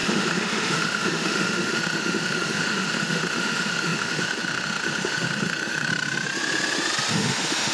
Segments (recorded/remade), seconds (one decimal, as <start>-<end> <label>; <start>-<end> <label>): 0.0-5.9 remade; 5.9-7.1 recorded; 7.1-7.7 remade